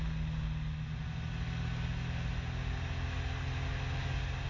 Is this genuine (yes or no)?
yes